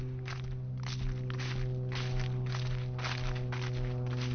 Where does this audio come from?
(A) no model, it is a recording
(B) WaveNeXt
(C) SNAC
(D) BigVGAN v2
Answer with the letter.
A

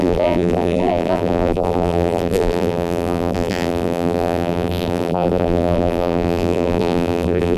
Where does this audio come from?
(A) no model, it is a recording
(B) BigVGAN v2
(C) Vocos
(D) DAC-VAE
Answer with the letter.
B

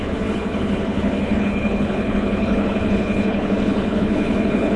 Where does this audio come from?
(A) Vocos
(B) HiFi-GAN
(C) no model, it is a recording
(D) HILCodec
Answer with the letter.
D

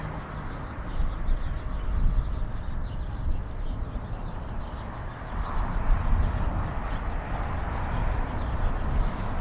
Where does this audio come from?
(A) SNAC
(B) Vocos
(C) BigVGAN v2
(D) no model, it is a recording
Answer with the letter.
D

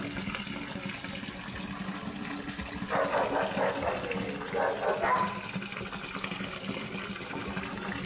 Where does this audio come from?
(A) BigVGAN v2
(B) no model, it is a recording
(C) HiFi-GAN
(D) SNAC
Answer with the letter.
B